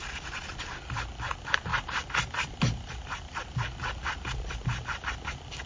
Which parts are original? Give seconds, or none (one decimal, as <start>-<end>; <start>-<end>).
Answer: 0.0-5.7